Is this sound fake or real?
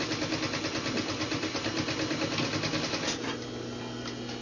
real